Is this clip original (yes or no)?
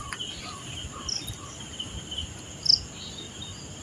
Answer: yes